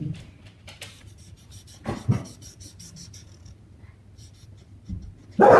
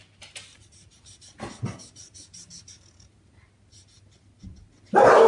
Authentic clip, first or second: second